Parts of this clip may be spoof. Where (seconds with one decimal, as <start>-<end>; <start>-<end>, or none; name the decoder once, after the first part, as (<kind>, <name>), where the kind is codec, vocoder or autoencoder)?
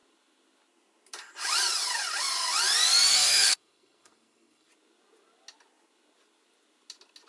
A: 3.1-4.7 (codec, SNAC)